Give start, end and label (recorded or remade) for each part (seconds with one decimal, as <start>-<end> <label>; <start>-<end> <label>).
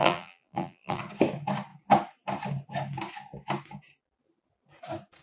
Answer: 0.0-1.0 remade; 1.0-5.2 recorded